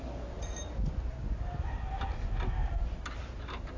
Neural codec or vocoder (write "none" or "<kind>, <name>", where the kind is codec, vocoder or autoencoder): none